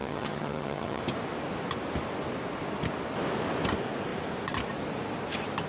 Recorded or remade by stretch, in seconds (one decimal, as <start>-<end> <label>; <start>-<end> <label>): 0.0-1.0 remade; 1.0-5.7 recorded